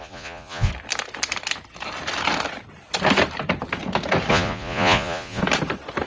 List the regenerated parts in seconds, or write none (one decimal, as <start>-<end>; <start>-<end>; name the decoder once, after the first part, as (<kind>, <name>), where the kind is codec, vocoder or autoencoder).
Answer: 0.0-0.7 (vocoder, Vocos); 4.3-5.4